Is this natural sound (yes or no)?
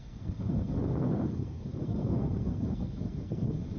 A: no